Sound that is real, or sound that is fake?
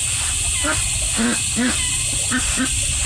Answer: real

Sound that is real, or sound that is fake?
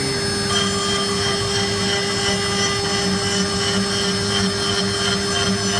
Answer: real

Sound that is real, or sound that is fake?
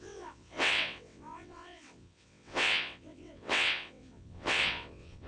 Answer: fake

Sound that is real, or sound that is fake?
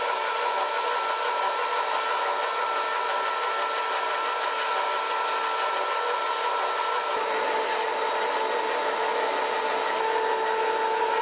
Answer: real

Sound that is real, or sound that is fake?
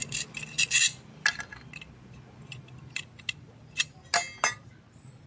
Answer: real